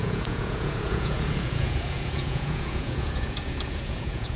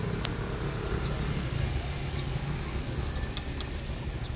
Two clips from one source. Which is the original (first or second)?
second